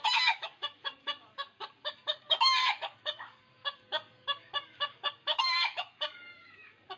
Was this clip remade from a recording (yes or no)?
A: yes